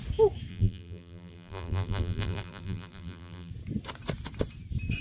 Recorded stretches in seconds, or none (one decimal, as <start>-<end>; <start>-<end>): 0.0-0.5; 3.5-5.0